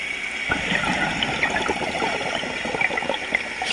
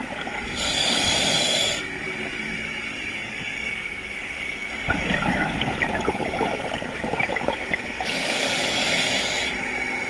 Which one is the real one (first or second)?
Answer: first